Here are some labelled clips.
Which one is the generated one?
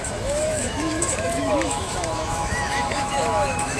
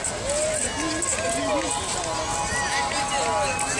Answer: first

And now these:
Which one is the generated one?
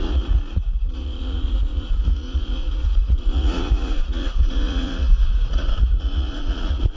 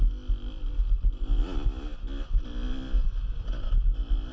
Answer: first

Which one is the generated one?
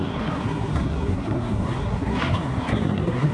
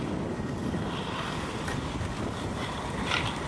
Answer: first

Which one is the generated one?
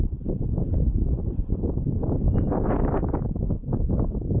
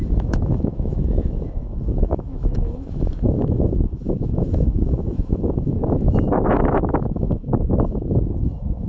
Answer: second